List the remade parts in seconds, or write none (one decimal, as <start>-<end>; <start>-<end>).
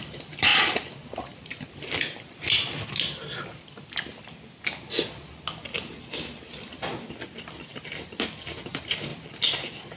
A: none